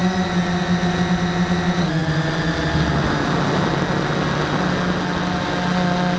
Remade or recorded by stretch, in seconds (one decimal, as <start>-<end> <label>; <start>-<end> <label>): 0.0-6.2 recorded